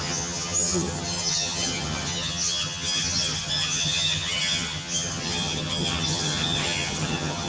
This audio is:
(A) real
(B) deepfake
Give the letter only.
B